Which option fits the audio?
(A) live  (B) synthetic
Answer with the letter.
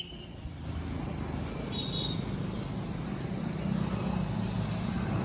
A